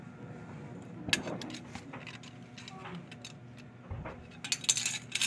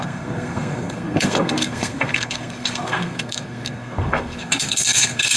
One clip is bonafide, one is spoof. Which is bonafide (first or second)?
first